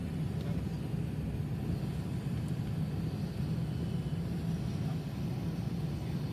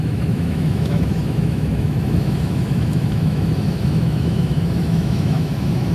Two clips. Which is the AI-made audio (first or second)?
second